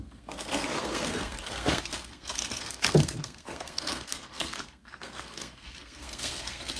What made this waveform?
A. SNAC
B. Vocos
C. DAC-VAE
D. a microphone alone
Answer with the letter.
A